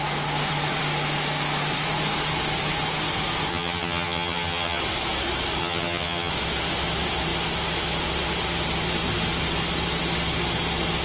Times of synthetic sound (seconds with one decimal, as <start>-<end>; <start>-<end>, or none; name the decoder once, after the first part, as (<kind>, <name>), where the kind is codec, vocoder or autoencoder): 3.5-4.8 (vocoder, HiFi-GAN); 5.6-6.3